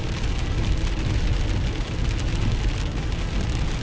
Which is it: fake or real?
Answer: real